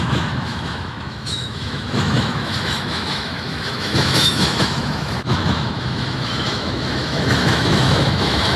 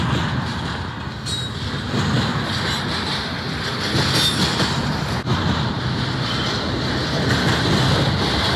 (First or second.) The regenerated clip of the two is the first